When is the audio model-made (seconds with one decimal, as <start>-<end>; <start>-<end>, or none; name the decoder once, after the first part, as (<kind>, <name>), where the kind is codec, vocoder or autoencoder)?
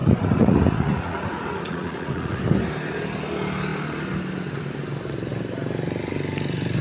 0.0-2.4 (vocoder, Vocos)